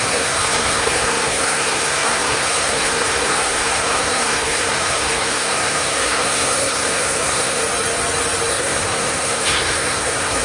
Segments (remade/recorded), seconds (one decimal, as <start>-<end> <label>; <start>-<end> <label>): 0.0-7.6 remade; 7.6-8.5 recorded; 8.5-10.4 remade

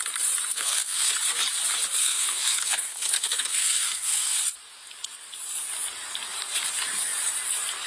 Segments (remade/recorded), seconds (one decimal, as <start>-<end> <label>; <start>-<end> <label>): 0.0-0.5 recorded; 0.5-1.1 remade; 1.1-2.0 recorded; 2.0-4.4 remade; 4.4-7.9 recorded

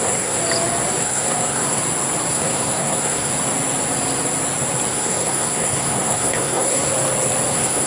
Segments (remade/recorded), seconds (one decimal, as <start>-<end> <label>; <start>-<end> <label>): 0.0-0.4 remade; 0.4-1.0 recorded; 1.0-1.8 remade; 1.8-2.3 recorded; 2.3-3.3 remade; 3.3-4.9 recorded; 4.9-6.9 remade; 6.9-7.5 recorded; 7.5-7.9 remade

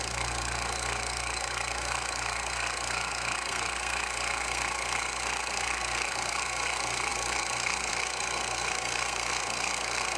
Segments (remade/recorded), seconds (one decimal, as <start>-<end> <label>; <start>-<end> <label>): 0.0-10.2 remade